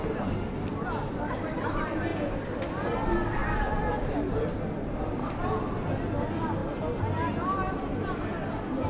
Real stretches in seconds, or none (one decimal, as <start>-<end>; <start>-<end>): 0.0-8.9